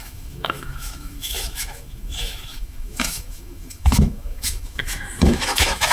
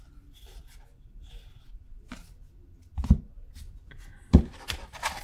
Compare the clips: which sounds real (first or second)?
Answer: second